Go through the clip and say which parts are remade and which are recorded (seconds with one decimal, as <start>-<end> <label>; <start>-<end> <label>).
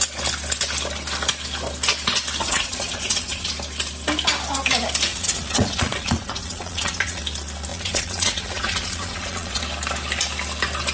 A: 0.0-2.4 recorded; 2.4-3.5 remade; 3.5-5.1 recorded; 5.1-7.2 remade; 7.2-7.7 recorded; 7.7-9.6 remade; 9.6-10.9 recorded